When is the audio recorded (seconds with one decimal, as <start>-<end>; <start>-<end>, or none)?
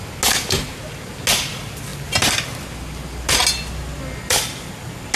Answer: 0.0-5.2